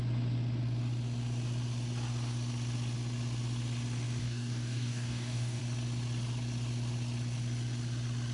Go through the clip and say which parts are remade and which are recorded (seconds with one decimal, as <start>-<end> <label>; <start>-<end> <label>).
0.0-4.2 recorded; 4.2-5.6 remade; 5.6-8.3 recorded